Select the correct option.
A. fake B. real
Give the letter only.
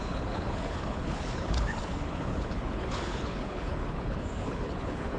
A